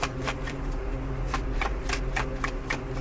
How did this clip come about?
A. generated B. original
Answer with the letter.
A